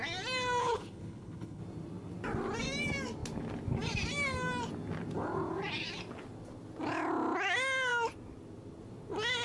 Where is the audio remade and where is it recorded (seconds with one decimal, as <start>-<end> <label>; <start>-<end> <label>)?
0.0-0.6 recorded; 0.6-1.6 remade; 1.6-9.4 recorded